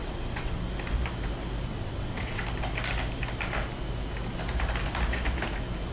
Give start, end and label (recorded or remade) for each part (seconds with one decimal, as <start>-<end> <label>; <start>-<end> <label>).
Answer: 0.0-0.6 remade; 0.6-1.7 recorded; 1.7-2.4 remade; 2.4-5.9 recorded